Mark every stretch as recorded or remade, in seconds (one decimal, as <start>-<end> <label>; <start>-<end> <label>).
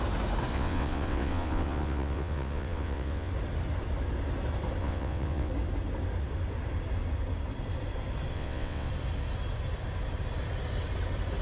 0.0-0.5 recorded; 0.5-3.3 remade; 3.3-4.8 recorded; 4.8-5.5 remade; 5.5-8.3 recorded; 8.3-8.9 remade; 8.9-11.4 recorded